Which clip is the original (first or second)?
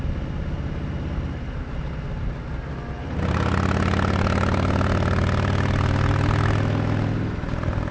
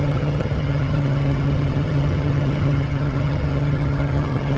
first